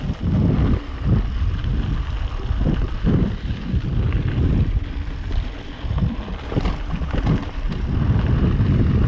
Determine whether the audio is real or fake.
real